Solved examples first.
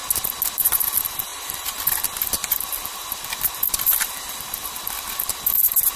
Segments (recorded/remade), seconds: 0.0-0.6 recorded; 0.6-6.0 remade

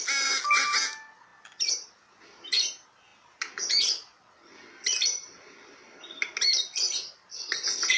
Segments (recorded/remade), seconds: 0.0-8.0 recorded

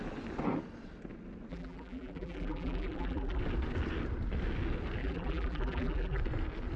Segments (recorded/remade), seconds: 0.0-1.5 recorded; 1.5-3.4 remade; 3.4-5.0 recorded; 5.0-6.2 remade; 6.2-6.8 recorded

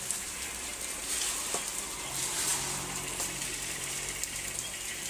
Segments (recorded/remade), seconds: 0.0-1.0 remade; 1.0-2.1 recorded; 2.1-5.1 remade

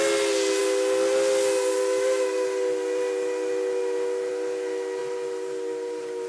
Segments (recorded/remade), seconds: 0.0-6.3 recorded